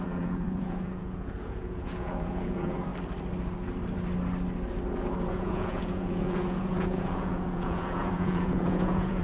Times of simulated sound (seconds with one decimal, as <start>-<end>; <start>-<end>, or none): 0.0-2.9; 5.3-9.2